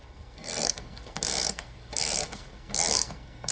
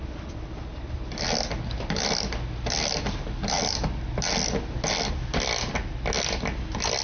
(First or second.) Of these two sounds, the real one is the second